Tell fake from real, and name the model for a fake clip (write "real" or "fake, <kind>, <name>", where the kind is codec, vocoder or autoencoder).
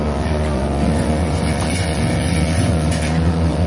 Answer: fake, vocoder, Vocos